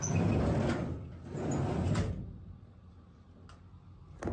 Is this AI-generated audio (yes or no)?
no